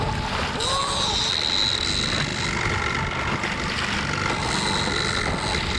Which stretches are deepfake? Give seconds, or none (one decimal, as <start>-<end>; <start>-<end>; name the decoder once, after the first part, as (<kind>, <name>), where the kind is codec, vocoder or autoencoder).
0.6-1.3 (vocoder, BigVGAN v2)